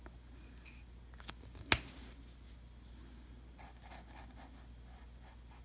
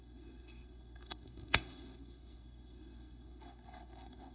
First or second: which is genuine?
first